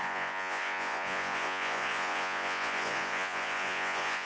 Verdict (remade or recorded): remade